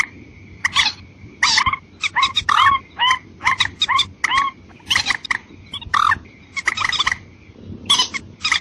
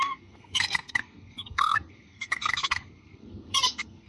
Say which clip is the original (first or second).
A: first